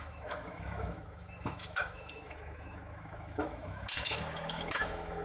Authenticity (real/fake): fake